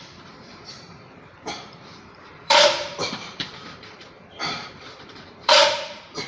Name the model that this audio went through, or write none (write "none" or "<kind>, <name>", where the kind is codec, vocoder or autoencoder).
vocoder, BigVGAN v2